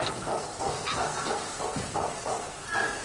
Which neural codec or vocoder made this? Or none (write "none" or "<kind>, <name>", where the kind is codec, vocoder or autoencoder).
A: codec, SNAC